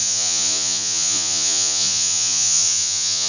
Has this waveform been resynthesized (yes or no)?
yes